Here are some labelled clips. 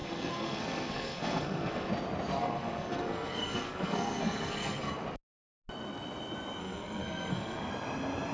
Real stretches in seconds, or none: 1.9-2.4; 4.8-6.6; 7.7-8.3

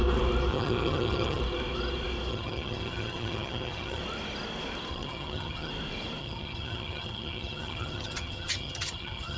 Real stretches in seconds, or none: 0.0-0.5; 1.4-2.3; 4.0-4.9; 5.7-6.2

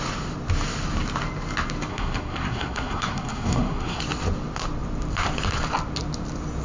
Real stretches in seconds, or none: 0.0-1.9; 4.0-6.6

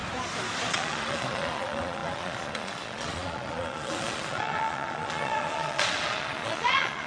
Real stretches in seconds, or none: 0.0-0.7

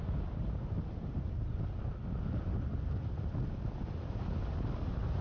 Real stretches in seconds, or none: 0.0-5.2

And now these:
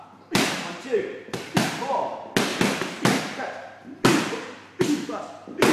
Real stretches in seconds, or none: 0.0-5.7

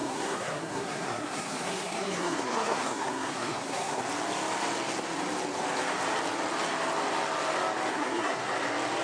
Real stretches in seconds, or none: 4.0-7.9; 8.5-9.0